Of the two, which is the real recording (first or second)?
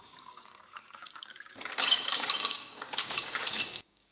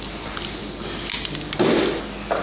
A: second